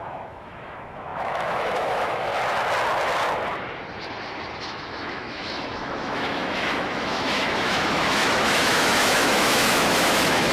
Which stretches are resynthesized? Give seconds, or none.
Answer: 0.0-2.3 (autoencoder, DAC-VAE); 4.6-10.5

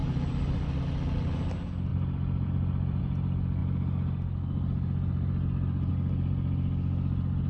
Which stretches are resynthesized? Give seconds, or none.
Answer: 0.0-0.8 (vocoder, BigVGAN v2); 1.9-3.0

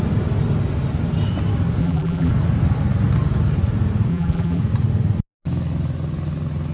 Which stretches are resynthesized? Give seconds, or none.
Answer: 1.8-2.3 (vocoder, BigVGAN v2); 4.1-4.6

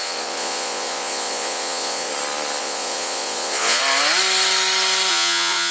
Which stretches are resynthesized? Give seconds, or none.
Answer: 0.0-2.1 (vocoder, Vocos); 2.6-3.8; 5.1-5.7

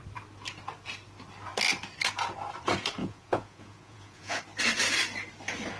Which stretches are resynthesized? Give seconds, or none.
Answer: 3.0-4.4 (vocoder, Vocos)

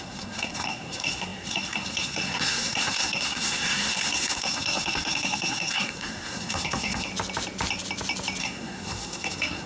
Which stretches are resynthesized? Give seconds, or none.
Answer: 0.0-7.1 (codec, SNAC); 8.4-9.7

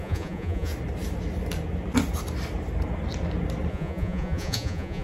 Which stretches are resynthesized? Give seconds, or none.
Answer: 0.0-0.7 (vocoder, Vocos); 3.7-5.0

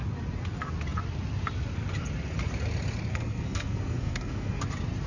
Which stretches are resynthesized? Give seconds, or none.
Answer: 3.1-4.6 (codec, SNAC)